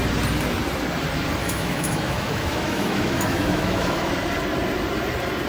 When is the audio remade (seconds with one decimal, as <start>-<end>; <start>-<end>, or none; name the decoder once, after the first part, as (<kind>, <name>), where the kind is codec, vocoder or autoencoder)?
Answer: 1.4-4.1 (autoencoder, DAC-VAE)